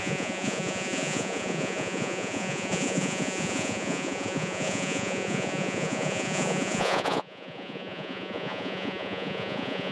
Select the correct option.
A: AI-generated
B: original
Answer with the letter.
A